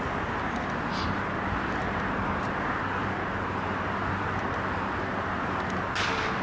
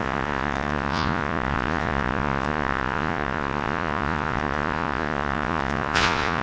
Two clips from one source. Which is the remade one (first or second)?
second